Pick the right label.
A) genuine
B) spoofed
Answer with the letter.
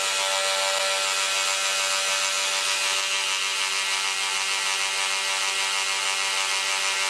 A